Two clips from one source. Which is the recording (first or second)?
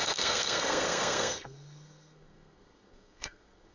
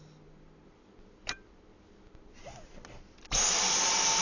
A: second